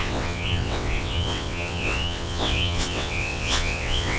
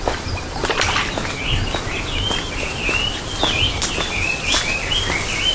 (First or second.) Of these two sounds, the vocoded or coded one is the first